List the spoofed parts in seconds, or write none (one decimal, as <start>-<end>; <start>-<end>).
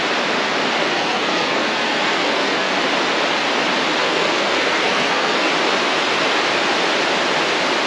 0.8-2.7; 4.0-5.5